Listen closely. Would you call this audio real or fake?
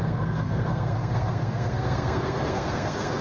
fake